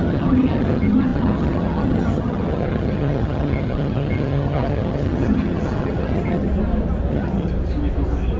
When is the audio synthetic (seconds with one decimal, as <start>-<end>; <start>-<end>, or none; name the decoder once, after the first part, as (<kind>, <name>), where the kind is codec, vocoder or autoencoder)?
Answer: 0.0-6.5 (vocoder, HiFi-GAN); 7.1-7.5